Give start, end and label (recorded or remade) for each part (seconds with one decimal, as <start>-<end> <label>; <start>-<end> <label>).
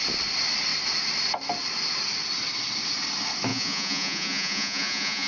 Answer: 0.0-3.5 recorded; 3.5-5.3 remade